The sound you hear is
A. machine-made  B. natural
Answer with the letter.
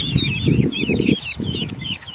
A